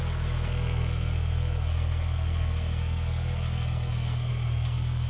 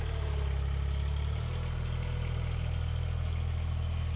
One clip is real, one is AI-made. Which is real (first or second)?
second